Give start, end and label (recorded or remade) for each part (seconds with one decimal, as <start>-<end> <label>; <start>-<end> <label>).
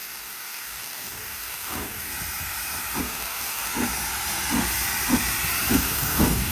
0.0-2.1 remade; 2.1-3.0 recorded; 3.0-3.7 remade; 3.7-5.7 recorded; 5.7-6.5 remade